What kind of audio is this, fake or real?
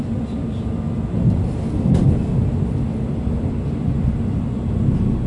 real